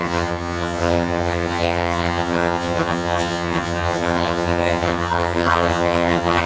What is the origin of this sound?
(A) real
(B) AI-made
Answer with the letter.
B